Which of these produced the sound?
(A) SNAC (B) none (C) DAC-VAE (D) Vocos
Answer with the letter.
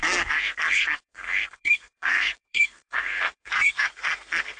A